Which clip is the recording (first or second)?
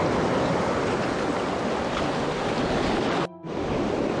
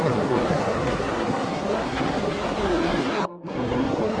first